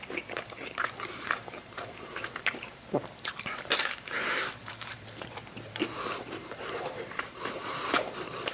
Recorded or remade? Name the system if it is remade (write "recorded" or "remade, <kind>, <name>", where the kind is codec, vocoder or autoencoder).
remade, vocoder, BigVGAN v2